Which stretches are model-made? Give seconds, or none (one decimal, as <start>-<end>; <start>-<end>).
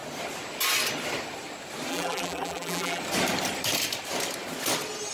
1.9-3.0